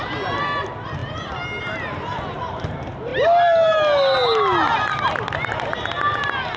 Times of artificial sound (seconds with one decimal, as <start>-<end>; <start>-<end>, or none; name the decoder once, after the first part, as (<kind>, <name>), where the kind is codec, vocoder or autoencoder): none